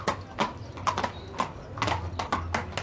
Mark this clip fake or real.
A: real